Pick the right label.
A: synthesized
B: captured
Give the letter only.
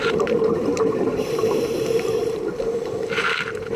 A